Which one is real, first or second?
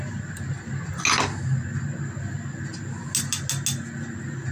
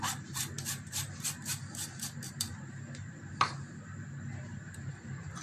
first